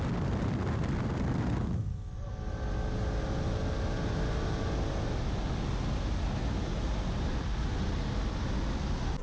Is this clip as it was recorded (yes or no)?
yes